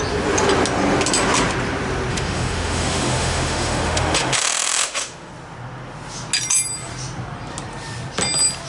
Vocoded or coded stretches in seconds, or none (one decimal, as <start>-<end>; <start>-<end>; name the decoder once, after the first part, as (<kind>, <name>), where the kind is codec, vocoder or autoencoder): 2.1-5.3 (autoencoder, DAC-VAE)